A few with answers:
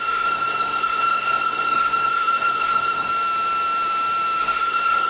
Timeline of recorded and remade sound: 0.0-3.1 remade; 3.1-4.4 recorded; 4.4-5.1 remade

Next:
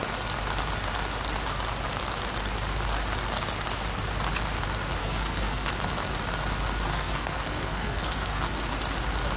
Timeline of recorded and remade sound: 0.0-5.0 recorded; 5.0-5.7 remade; 5.7-6.9 recorded; 6.9-8.4 remade; 8.4-9.4 recorded

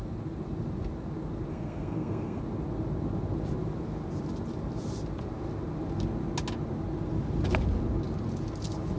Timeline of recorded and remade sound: 0.0-1.5 recorded; 1.5-2.4 remade; 2.4-9.0 recorded

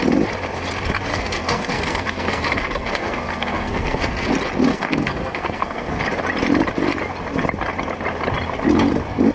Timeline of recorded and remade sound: 0.0-1.1 recorded; 1.1-4.3 remade; 4.3-4.7 recorded; 4.7-6.0 remade; 6.0-9.3 recorded

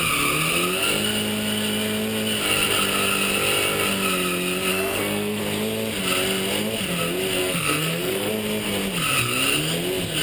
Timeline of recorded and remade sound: 0.0-4.7 recorded; 4.7-5.4 remade; 5.4-7.4 recorded; 7.4-8.3 remade; 8.3-10.2 recorded

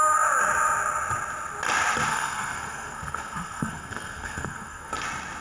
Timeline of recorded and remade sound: 0.0-2.1 recorded; 2.1-4.9 remade; 4.9-5.4 recorded

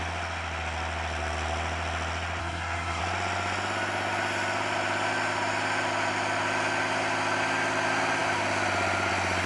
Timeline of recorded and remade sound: 0.0-2.4 recorded; 2.4-3.0 remade; 3.0-9.5 recorded

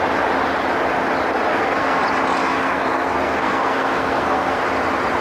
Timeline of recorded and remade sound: 0.0-1.5 recorded; 1.5-2.0 remade; 2.0-2.4 recorded; 2.4-4.6 remade; 4.6-5.2 recorded